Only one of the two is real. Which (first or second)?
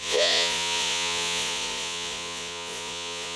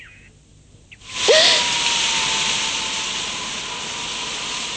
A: second